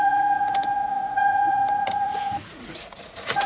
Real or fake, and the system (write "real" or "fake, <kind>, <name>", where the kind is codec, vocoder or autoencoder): fake, vocoder, Vocos